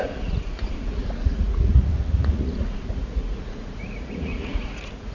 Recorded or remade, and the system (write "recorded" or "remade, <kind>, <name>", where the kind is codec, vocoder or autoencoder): remade, vocoder, Vocos